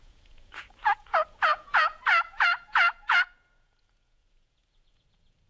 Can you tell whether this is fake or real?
fake